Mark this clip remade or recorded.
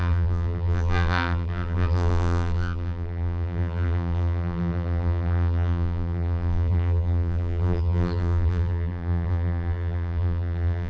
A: remade